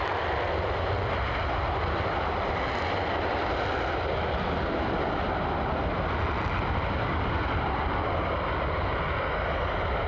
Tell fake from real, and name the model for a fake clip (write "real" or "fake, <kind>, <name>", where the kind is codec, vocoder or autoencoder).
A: real